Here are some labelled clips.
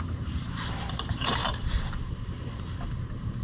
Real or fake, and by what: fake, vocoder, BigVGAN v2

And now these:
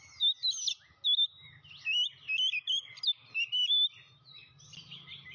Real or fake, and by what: real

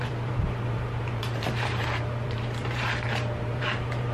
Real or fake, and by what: fake, vocoder, BigVGAN v2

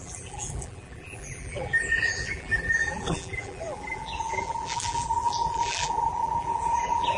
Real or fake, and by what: fake, vocoder, BigVGAN v2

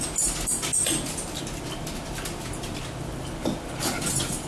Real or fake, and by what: real